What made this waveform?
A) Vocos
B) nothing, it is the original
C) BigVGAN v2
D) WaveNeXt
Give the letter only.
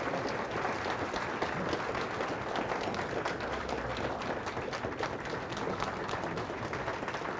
B